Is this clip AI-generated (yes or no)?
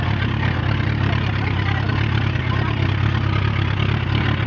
no